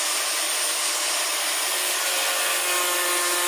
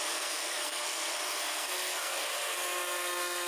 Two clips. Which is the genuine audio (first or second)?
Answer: first